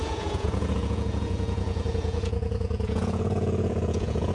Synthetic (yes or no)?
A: yes